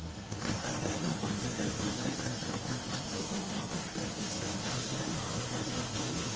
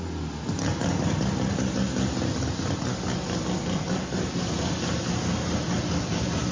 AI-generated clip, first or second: first